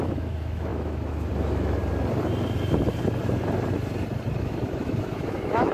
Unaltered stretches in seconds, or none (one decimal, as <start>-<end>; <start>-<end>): 1.8-4.4